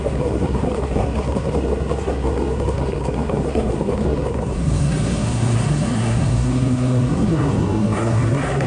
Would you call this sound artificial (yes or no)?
yes